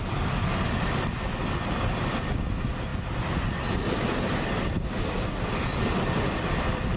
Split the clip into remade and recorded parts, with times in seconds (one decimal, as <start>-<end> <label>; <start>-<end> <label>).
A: 0.0-2.9 remade; 2.9-6.2 recorded; 6.2-7.0 remade